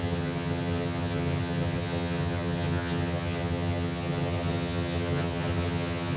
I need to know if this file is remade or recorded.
remade